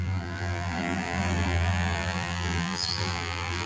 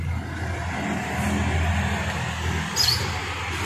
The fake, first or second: first